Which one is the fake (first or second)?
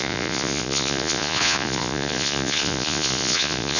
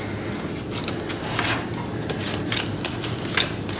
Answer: first